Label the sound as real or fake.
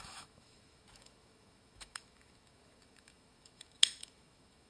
fake